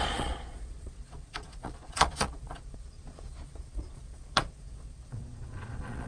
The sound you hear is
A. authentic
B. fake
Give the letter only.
B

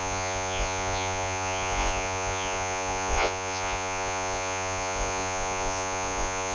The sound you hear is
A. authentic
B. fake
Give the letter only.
B